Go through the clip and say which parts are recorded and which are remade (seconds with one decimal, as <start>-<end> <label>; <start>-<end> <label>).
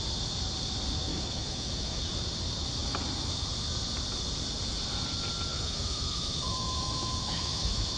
0.0-1.1 recorded; 1.1-2.1 remade; 2.1-5.5 recorded; 5.5-8.0 remade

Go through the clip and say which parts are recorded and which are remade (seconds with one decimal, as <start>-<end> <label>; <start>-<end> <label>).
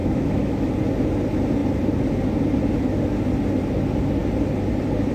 0.0-0.7 remade; 0.7-5.1 recorded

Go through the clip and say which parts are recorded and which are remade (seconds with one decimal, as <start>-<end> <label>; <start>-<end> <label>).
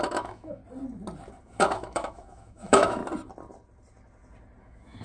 0.0-0.6 remade; 0.6-1.4 recorded; 1.4-3.0 remade; 3.0-4.6 recorded; 4.6-5.0 remade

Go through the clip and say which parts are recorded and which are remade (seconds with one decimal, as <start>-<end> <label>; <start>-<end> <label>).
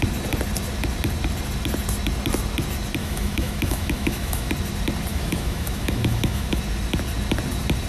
0.0-3.0 recorded; 3.0-4.5 remade; 4.5-5.1 recorded; 5.1-6.6 remade; 6.6-7.9 recorded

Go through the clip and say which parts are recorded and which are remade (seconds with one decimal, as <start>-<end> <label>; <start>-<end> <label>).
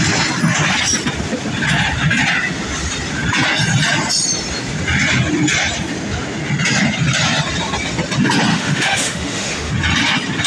0.0-8.5 recorded; 8.5-9.7 remade; 9.7-10.5 recorded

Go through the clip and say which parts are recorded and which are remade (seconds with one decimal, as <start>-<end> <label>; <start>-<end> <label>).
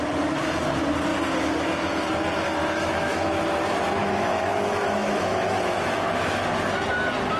0.0-2.6 recorded; 2.6-3.3 remade; 3.3-4.0 recorded; 4.0-6.4 remade; 6.4-7.4 recorded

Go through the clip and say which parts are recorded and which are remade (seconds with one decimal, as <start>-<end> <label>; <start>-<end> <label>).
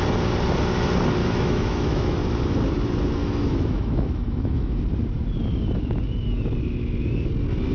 0.0-1.2 recorded; 1.2-2.2 remade; 2.2-3.2 recorded; 3.2-4.8 remade; 4.8-7.7 recorded